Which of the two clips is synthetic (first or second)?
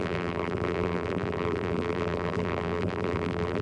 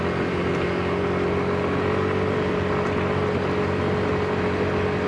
first